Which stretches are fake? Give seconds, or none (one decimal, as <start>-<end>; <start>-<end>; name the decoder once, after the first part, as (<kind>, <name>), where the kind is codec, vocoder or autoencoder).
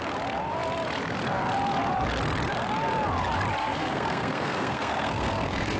3.6-5.8 (codec, SNAC)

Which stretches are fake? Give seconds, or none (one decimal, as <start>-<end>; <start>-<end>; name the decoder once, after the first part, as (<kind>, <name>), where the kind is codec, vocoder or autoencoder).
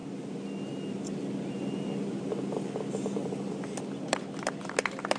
none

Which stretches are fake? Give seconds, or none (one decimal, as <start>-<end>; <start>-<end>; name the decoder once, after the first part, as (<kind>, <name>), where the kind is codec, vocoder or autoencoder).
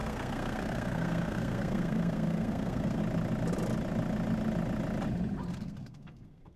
0.0-3.0 (codec, SNAC); 5.5-6.6